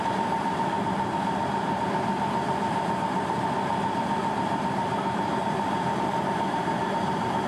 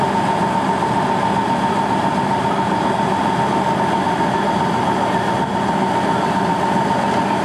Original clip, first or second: second